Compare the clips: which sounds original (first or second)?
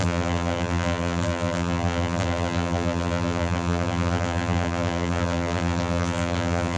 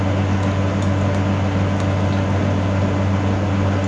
second